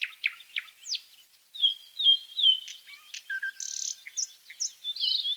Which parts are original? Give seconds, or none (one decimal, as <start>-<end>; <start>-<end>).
0.0-1.7; 3.4-5.4